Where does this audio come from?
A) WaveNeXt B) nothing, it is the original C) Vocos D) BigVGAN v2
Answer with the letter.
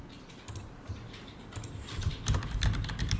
B